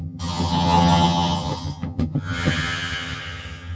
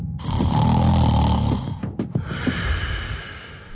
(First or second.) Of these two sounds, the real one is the second